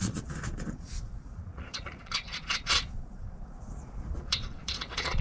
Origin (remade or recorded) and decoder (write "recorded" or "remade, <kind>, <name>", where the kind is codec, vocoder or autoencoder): remade, vocoder, Vocos